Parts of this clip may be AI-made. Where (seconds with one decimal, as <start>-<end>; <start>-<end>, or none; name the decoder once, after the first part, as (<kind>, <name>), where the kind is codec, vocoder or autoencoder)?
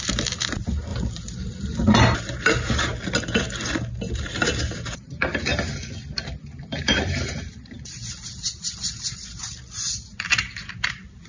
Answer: 0.0-2.9 (vocoder, BigVGAN v2); 4.7-5.5; 6.4-11.3